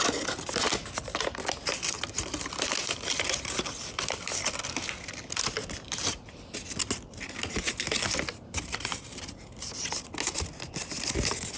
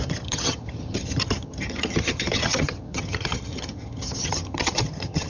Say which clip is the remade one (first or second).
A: second